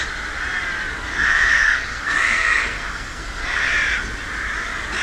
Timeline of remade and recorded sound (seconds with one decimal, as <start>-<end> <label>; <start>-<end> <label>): 0.0-1.1 recorded; 1.1-3.7 remade; 3.7-5.0 recorded

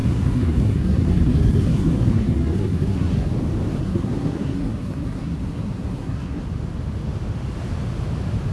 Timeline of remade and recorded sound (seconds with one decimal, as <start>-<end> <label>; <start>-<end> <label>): 0.0-3.3 remade; 3.3-3.8 recorded; 3.8-6.4 remade; 6.4-8.5 recorded

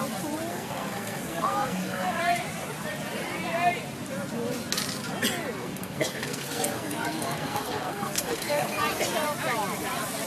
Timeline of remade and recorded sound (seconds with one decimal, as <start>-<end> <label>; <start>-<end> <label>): 0.0-0.5 recorded; 0.5-2.2 remade; 2.2-5.6 recorded; 5.6-8.8 remade; 8.8-10.3 recorded

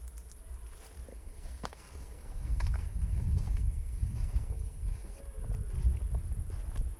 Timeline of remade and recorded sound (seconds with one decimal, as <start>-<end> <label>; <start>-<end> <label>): 0.0-1.1 recorded; 1.1-5.2 remade; 5.2-7.0 recorded

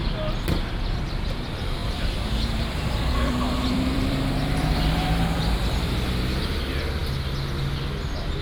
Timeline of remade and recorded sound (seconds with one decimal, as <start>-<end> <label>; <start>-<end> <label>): 0.0-1.8 recorded; 1.8-6.6 remade; 6.6-8.4 recorded

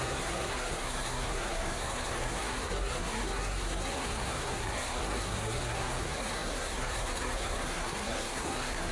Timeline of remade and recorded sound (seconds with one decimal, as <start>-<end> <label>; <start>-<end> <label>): 0.0-8.9 remade

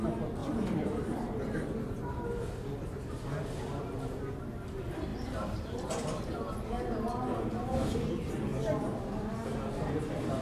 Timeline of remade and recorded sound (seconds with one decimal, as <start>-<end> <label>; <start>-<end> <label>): 0.0-0.4 recorded; 0.4-1.9 remade; 1.9-5.1 recorded; 5.1-6.2 remade; 6.2-10.4 recorded